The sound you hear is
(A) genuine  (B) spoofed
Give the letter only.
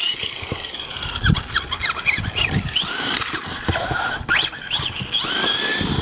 A